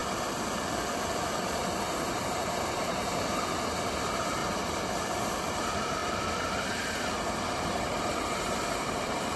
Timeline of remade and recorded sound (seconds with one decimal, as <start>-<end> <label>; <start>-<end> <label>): 0.0-1.4 recorded; 1.4-3.3 remade; 3.3-4.0 recorded; 4.0-4.4 remade; 4.4-5.5 recorded; 5.5-9.4 remade